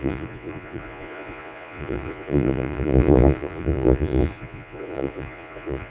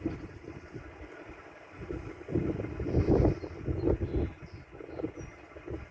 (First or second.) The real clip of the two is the second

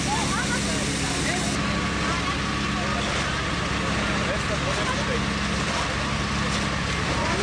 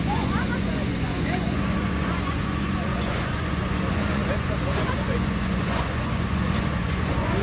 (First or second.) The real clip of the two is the first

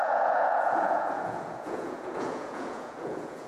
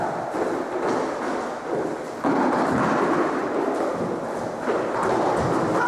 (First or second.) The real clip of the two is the second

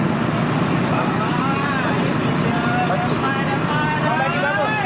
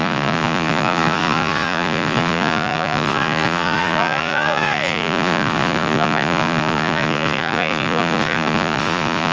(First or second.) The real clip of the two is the first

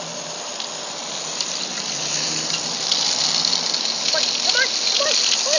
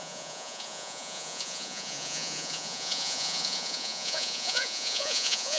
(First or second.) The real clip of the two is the first